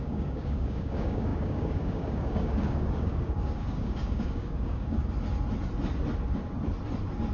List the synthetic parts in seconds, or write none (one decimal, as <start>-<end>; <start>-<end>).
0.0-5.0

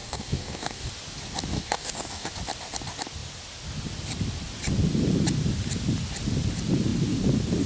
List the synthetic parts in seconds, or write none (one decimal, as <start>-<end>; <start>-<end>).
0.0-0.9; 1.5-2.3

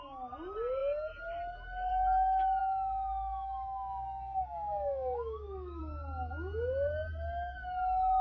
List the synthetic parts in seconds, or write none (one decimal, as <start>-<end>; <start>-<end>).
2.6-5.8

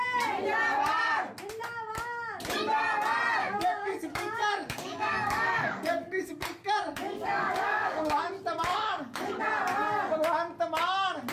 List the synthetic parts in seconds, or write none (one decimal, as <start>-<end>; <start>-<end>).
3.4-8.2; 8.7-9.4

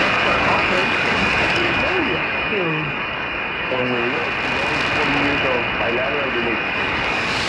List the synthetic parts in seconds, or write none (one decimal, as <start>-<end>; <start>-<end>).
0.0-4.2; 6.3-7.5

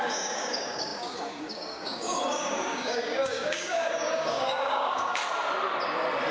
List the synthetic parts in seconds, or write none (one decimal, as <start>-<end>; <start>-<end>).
0.0-5.2

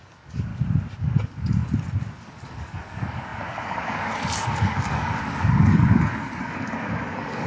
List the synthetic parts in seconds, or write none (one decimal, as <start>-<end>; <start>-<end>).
0.0-0.5; 1.0-1.6; 2.2-7.5